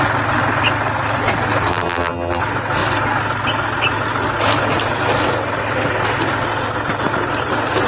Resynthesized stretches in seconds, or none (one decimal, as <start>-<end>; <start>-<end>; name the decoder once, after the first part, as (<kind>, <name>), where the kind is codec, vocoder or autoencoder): 1.7-2.4 (vocoder, BigVGAN v2)